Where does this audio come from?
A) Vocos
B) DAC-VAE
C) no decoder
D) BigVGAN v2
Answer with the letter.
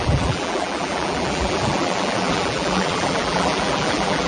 D